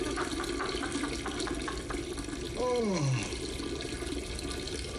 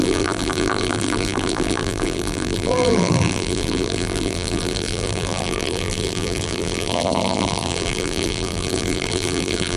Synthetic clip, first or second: second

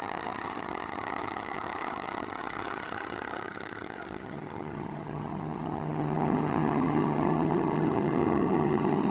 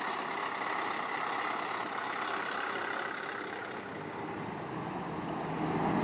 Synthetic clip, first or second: first